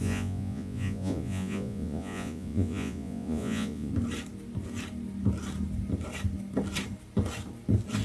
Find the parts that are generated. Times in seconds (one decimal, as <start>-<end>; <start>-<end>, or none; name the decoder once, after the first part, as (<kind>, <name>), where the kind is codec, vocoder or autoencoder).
0.0-3.9 (vocoder, Vocos)